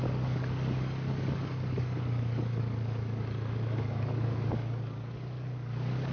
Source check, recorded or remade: remade